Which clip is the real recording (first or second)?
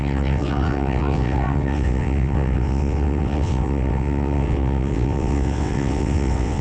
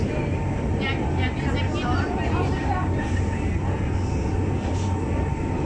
second